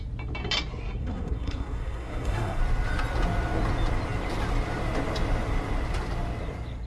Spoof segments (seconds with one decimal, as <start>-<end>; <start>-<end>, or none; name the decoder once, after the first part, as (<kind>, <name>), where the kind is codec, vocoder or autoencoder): 1.0-2.6 (codec, SNAC)

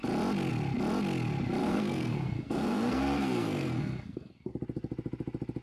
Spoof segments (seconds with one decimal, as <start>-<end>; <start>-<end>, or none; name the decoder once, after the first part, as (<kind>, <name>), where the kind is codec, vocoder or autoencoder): 1.6-4.5 (codec, SNAC)